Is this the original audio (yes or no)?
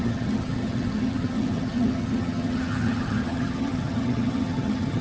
no